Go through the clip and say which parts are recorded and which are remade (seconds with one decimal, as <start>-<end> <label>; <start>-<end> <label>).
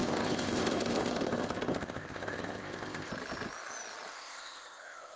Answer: 0.0-3.1 remade; 3.1-4.1 recorded; 4.1-5.2 remade